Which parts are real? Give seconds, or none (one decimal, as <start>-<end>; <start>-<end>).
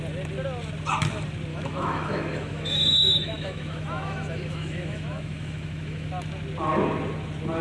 0.0-1.5; 6.1-7.6